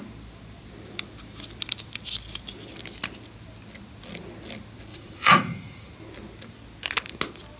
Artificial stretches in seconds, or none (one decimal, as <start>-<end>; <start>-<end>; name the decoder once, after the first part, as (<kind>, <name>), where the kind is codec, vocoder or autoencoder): 4.9-5.9 (vocoder, Vocos)